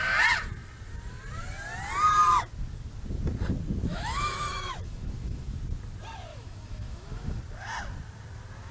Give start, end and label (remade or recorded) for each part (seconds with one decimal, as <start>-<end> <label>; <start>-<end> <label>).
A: 0.0-3.9 recorded; 3.9-5.6 remade; 5.6-6.3 recorded; 6.3-7.4 remade; 7.4-8.7 recorded